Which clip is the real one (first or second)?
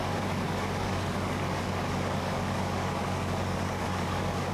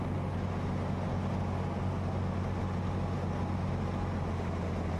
second